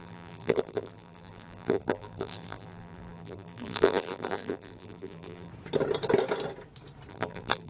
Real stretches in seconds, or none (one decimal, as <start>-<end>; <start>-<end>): 5.5-7.1